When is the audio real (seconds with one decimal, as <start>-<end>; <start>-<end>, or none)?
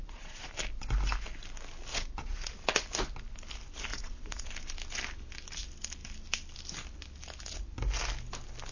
0.5-1.9; 2.5-3.9; 4.5-8.7